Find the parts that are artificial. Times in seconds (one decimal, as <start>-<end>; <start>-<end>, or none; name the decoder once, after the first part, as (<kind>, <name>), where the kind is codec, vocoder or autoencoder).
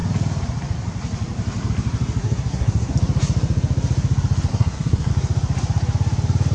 2.2-2.9 (codec, SNAC); 4.5-5.1